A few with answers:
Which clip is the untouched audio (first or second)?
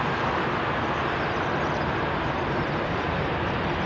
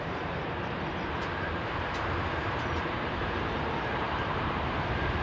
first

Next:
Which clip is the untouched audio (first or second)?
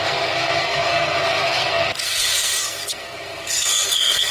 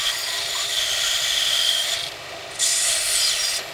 second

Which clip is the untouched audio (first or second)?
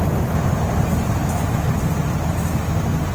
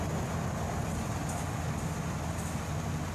second